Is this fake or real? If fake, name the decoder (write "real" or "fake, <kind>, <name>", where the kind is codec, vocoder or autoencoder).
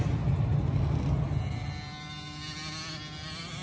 real